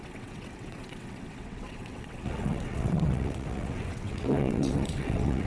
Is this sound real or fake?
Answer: fake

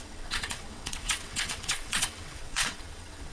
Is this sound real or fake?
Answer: fake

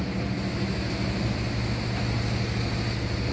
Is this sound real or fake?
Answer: real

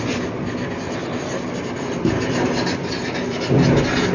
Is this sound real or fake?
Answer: real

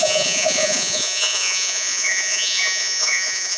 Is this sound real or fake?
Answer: fake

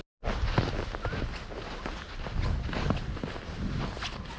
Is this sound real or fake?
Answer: real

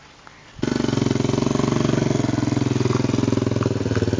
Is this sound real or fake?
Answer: real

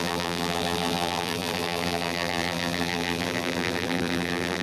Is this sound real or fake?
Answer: fake